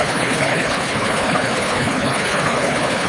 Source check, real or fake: fake